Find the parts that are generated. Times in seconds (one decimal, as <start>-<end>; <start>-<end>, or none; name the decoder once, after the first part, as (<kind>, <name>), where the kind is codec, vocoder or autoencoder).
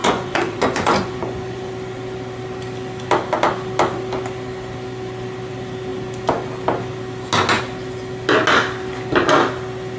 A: 0.0-1.7 (vocoder, Vocos)